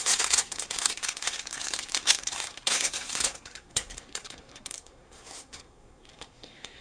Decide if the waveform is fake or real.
fake